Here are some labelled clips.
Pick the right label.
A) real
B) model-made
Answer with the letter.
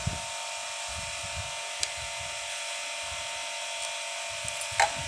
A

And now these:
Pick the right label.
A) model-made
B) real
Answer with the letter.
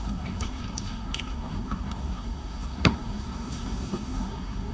A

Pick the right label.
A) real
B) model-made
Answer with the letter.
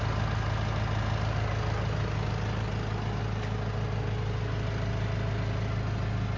A